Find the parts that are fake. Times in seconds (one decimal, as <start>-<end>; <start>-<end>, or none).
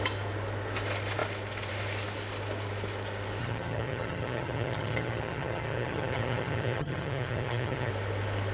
3.4-7.9